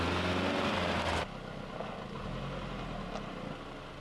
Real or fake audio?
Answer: real